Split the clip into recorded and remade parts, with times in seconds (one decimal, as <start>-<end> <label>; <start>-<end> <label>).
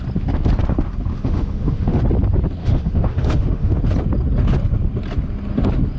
0.0-1.1 recorded; 1.1-2.0 remade; 2.0-2.6 recorded; 2.6-3.8 remade; 3.8-6.0 recorded